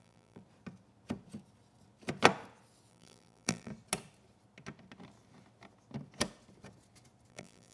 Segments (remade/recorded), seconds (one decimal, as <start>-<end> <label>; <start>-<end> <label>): 0.0-0.4 remade; 0.4-2.9 recorded; 2.9-3.7 remade; 3.7-7.3 recorded; 7.3-7.7 remade